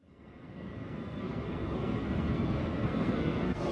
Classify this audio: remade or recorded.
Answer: remade